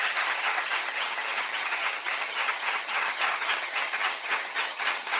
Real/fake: fake